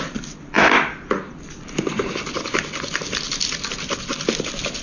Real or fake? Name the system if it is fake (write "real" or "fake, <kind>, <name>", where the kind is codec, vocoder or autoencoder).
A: fake, vocoder, BigVGAN v2